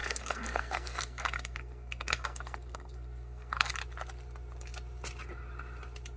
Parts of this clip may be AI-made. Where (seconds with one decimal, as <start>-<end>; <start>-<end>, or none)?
0.0-3.7